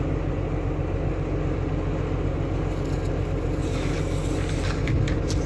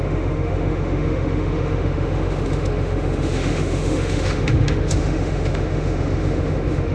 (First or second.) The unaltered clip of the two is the first